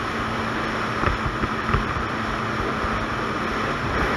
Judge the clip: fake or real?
real